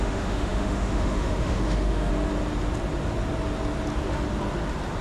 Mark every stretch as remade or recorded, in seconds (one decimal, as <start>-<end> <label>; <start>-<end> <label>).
0.0-2.1 remade; 2.1-5.0 recorded